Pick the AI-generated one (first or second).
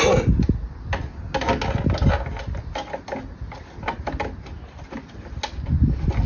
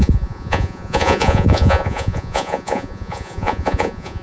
second